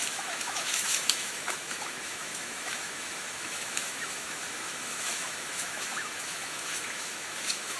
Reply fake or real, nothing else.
fake